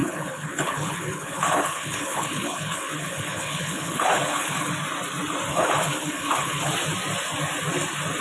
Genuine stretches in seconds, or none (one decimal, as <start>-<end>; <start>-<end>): 4.7-5.5; 6.7-8.2